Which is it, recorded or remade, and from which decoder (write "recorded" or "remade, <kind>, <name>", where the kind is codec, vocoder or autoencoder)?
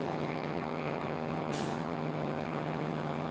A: remade, vocoder, HiFi-GAN